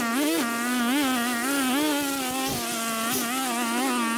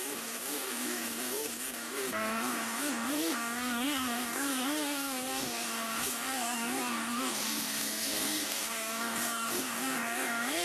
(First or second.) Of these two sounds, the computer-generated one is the second